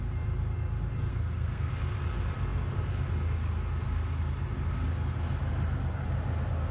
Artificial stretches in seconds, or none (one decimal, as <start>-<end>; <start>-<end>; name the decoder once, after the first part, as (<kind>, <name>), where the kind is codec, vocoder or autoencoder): 1.1-1.7 (codec, SNAC)

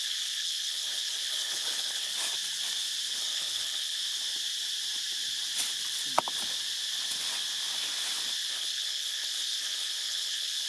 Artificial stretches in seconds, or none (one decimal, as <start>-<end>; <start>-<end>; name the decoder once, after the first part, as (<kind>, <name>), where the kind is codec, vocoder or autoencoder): 0.0-2.1 (codec, HILCodec); 3.2-4.0; 8.5-10.7

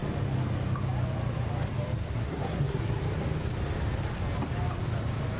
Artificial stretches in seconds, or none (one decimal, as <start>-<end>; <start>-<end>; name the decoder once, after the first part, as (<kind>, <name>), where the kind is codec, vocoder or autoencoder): 2.0-3.0 (codec, SNAC)